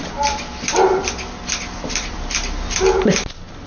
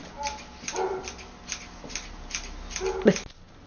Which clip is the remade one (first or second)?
first